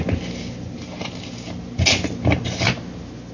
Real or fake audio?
real